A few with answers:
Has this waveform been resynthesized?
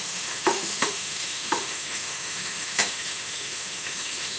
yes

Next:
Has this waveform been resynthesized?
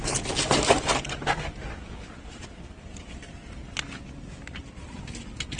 no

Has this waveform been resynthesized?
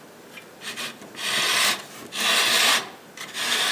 no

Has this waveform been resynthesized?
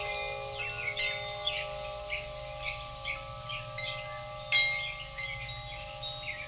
no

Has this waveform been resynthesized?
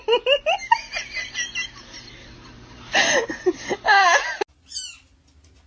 no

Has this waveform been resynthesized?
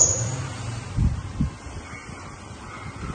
no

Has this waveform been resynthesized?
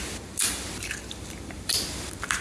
no